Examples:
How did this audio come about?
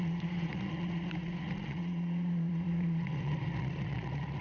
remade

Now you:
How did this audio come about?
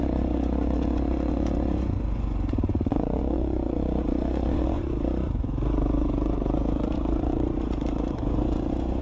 remade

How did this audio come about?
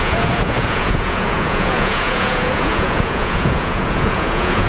remade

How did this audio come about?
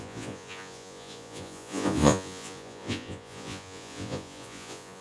remade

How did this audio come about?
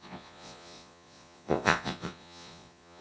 remade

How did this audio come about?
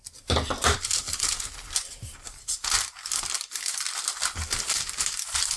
recorded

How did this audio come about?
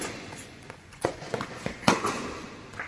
remade